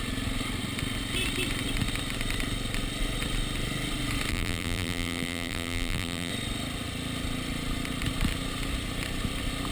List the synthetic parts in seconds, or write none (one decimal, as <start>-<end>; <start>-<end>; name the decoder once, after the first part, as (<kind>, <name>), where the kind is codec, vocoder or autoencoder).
4.3-6.3 (vocoder, BigVGAN v2)